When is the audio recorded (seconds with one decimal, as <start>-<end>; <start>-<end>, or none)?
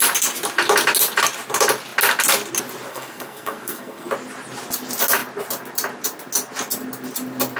0.0-2.9; 4.1-7.6